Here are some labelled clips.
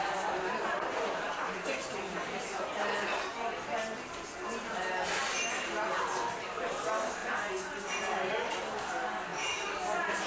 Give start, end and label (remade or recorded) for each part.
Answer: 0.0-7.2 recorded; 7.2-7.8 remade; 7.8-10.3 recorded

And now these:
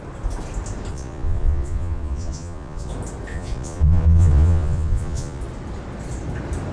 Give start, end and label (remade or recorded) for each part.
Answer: 0.0-0.9 recorded; 0.9-2.9 remade; 2.9-3.3 recorded; 3.3-5.4 remade; 5.4-6.7 recorded

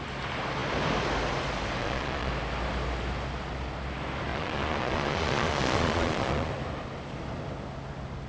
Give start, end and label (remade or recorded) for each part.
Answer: 0.0-1.8 recorded; 1.8-2.3 remade; 2.3-4.3 recorded; 4.3-6.5 remade; 6.5-8.3 recorded